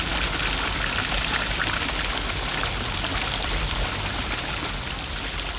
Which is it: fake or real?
real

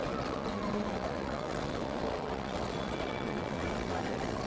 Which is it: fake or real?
fake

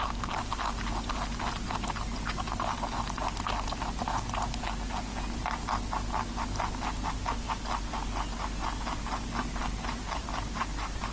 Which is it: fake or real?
real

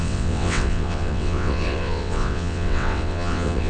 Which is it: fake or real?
fake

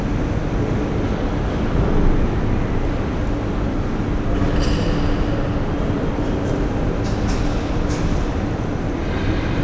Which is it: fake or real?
real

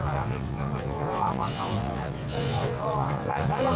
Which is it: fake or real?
fake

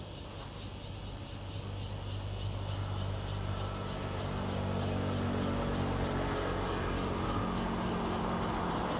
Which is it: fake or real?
real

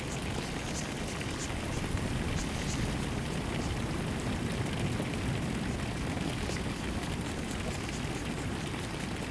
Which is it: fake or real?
real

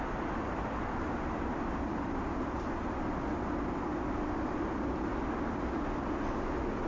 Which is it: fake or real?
real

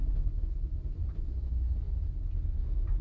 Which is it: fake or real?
real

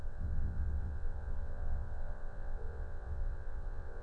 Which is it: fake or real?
fake